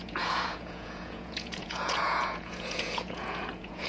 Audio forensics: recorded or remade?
remade